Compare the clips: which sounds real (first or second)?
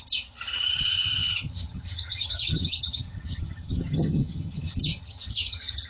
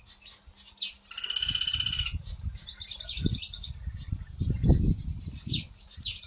second